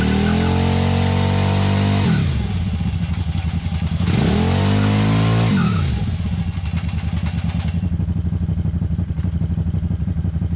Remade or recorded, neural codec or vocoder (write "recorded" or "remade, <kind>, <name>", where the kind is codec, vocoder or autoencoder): recorded